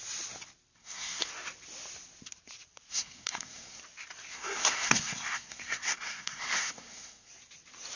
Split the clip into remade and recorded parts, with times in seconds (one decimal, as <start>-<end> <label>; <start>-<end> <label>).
0.0-0.8 recorded; 0.8-1.3 remade; 1.3-2.9 recorded; 2.9-3.8 remade; 3.8-4.3 recorded; 4.3-7.3 remade; 7.3-8.0 recorded